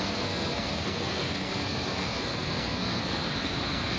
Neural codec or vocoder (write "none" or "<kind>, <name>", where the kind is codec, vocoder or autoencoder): codec, SNAC